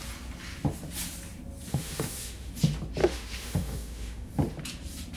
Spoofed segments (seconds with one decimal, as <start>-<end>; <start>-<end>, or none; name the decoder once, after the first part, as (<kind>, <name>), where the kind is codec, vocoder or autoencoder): 1.7-2.5 (autoencoder, DAC-VAE); 3.0-4.3